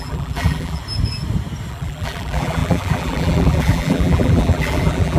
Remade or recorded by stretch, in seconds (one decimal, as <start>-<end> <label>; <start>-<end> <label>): 0.0-0.8 remade; 0.8-1.7 recorded; 1.7-5.2 remade

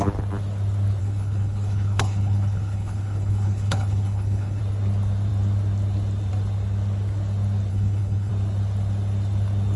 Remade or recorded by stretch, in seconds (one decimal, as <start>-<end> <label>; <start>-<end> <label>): 0.0-1.0 recorded; 1.0-4.6 remade; 4.6-7.7 recorded; 7.7-8.3 remade; 8.3-9.8 recorded

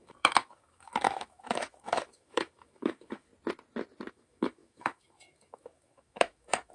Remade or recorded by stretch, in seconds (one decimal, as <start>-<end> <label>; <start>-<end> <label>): 0.0-3.3 remade; 3.3-4.1 recorded; 4.1-6.7 remade